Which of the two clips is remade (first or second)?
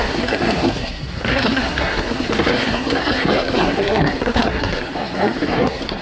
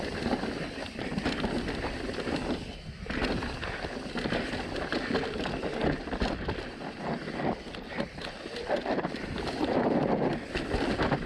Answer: first